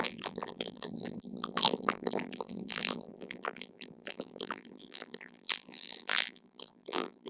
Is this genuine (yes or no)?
no